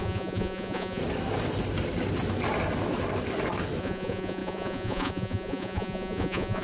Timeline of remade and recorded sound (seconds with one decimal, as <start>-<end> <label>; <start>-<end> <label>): 0.0-1.0 remade; 1.0-3.8 recorded; 3.8-6.6 remade